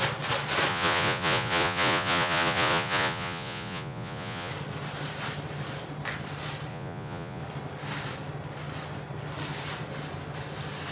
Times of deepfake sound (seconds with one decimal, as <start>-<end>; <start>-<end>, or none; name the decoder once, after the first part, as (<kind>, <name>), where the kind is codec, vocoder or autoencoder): 0.7-4.5 (vocoder, Vocos); 6.7-7.4